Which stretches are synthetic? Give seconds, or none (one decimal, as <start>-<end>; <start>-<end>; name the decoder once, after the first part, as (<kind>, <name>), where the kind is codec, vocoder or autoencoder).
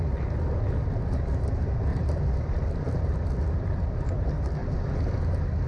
1.9-3.3 (vocoder, BigVGAN v2)